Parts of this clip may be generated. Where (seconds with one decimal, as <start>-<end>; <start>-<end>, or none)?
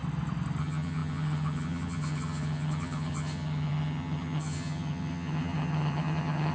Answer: 0.6-6.5